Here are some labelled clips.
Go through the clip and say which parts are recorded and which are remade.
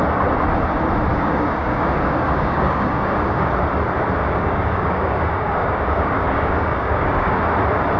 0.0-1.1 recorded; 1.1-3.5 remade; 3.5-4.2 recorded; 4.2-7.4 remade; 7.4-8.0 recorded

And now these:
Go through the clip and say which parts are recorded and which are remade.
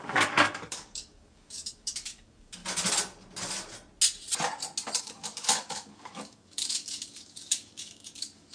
0.0-2.6 remade; 2.6-5.0 recorded; 5.0-8.5 remade